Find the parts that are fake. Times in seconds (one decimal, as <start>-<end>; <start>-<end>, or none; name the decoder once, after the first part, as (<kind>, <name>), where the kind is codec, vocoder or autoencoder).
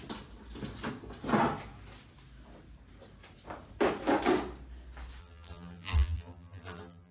5.2-7.1 (vocoder, BigVGAN v2)